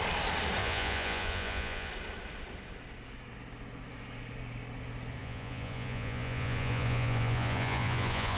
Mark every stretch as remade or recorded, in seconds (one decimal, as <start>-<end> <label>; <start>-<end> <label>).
0.0-0.6 recorded; 0.6-1.9 remade; 1.9-5.2 recorded; 5.2-8.4 remade